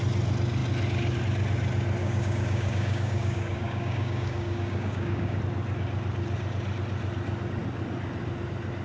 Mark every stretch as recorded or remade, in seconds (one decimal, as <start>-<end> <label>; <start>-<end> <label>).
0.0-2.0 recorded; 2.0-5.4 remade; 5.4-8.8 recorded